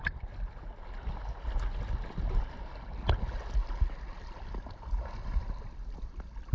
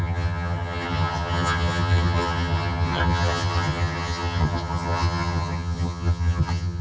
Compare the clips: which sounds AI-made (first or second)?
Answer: second